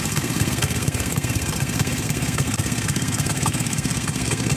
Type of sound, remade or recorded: remade